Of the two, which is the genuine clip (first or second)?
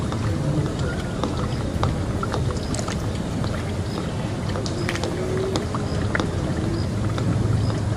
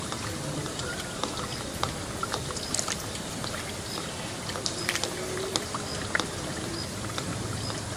first